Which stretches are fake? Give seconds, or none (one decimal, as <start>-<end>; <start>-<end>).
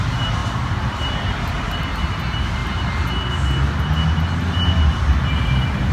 0.0-2.6; 4.6-5.9